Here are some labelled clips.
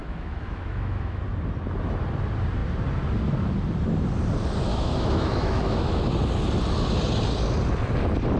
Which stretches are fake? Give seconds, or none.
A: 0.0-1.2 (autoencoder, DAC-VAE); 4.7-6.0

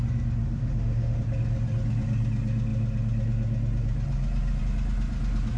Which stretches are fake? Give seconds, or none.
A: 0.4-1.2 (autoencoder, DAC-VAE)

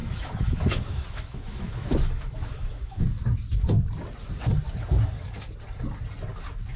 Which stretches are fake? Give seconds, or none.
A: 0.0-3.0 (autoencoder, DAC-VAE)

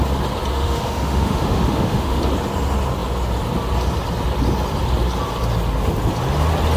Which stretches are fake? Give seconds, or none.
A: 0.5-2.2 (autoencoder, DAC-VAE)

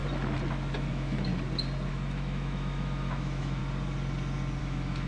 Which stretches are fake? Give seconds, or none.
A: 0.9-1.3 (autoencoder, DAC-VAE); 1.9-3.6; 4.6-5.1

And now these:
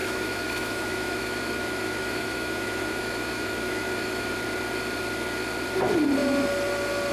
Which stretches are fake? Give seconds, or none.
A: 0.0-4.3 (autoencoder, DAC-VAE)

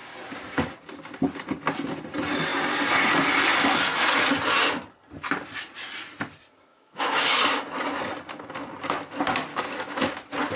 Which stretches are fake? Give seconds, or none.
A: 6.7-7.4 (autoencoder, DAC-VAE); 9.5-10.1

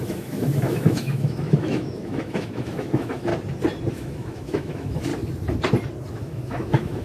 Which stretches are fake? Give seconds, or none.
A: 0.0-3.3 (autoencoder, DAC-VAE); 3.9-5.1; 6.1-7.0